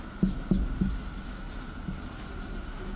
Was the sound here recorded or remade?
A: recorded